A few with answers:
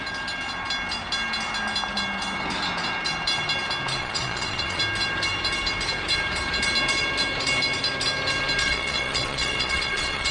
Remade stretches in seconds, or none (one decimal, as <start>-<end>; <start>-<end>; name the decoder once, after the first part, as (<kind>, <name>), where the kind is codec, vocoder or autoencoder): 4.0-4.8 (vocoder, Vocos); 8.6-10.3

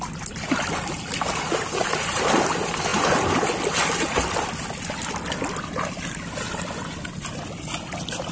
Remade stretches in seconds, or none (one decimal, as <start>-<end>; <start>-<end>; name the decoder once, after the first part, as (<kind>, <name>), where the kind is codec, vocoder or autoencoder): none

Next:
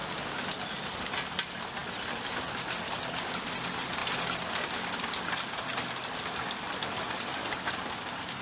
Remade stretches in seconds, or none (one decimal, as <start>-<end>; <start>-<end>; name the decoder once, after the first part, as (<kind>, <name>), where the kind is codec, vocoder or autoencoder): none

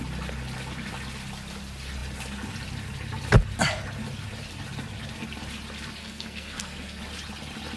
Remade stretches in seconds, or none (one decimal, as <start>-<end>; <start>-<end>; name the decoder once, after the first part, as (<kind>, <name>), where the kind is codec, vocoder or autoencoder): 6.0-7.0 (codec, SNAC)

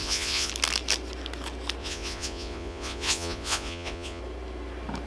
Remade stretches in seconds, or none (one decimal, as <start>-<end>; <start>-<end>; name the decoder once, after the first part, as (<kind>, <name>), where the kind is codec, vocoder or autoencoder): 0.0-0.5 (vocoder, Vocos); 1.8-4.2

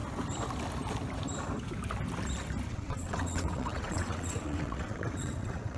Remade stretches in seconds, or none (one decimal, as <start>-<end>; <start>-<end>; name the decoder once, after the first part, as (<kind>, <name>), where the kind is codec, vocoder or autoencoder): 2.7-5.8 (vocoder, WaveNeXt)